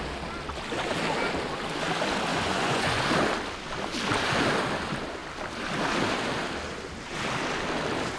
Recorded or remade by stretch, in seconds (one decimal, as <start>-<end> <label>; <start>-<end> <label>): 0.0-2.3 recorded; 2.3-3.0 remade; 3.0-8.2 recorded